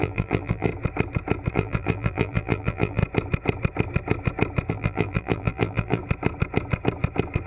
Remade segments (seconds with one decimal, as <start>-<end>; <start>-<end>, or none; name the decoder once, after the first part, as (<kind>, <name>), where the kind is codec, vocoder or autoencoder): 0.0-0.7 (vocoder, BigVGAN v2); 1.5-3.0; 4.7-6.0